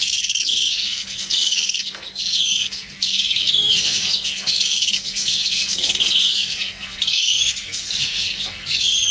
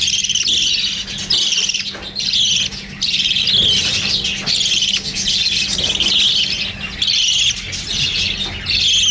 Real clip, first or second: second